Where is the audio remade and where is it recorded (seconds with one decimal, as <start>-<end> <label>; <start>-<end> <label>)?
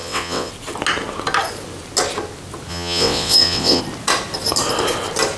0.0-0.5 remade; 0.5-2.7 recorded; 2.7-3.8 remade; 3.8-5.4 recorded